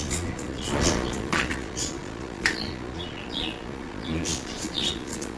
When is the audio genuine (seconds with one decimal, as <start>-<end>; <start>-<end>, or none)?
none